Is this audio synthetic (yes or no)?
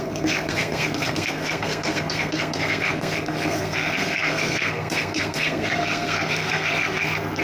yes